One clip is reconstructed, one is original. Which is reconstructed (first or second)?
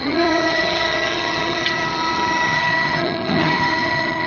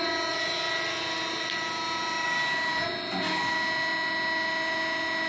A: first